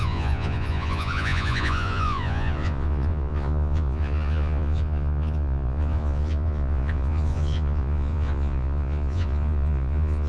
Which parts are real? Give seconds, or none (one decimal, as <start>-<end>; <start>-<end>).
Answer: none

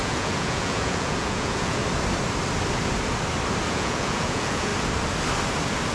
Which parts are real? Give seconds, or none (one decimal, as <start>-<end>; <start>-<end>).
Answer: 1.8-3.6; 4.7-5.9

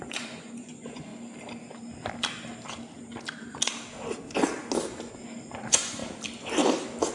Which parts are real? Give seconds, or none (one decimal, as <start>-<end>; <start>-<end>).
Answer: 1.1-5.4; 6.0-7.1

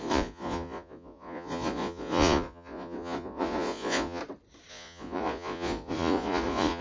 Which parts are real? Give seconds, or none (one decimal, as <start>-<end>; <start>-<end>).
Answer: 4.2-4.7

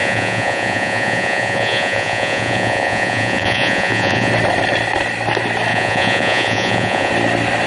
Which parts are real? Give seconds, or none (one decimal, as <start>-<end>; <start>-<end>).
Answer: 4.3-5.7; 7.1-7.7

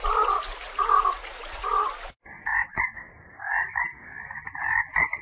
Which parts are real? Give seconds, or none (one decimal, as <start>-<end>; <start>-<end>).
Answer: 0.0-5.2

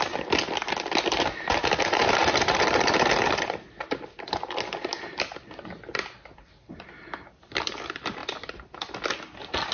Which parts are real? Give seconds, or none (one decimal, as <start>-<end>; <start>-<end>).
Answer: 0.0-9.7

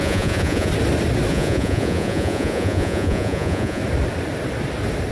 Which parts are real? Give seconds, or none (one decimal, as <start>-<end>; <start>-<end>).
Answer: 0.7-1.3; 3.8-5.1